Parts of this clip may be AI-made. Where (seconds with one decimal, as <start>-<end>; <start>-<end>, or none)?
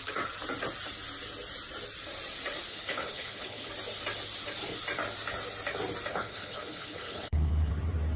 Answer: 2.7-3.7; 6.1-7.7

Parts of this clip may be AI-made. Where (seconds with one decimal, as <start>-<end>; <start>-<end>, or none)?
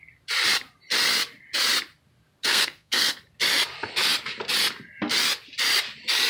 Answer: 2.5-3.2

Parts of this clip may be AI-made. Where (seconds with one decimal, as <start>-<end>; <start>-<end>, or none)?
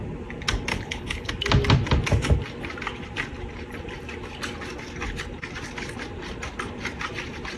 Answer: 0.7-1.3